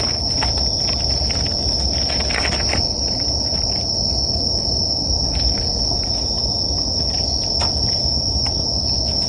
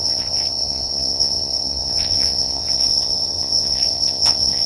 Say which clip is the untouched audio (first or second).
first